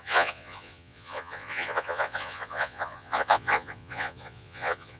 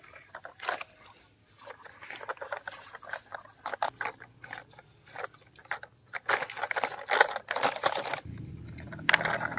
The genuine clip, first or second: second